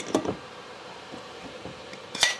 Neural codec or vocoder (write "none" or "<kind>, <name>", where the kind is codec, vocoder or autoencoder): vocoder, BigVGAN v2